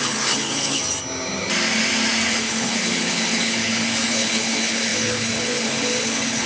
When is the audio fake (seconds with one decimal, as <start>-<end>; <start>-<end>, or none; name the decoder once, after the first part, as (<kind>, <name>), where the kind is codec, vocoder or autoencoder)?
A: 0.0-0.8 (codec, HILCodec); 2.3-6.5